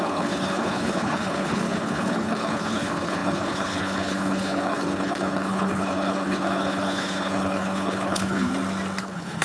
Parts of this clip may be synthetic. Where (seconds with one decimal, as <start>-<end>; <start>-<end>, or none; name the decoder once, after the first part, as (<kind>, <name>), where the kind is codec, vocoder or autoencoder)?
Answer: 0.0-8.5 (codec, HILCodec); 9.0-9.4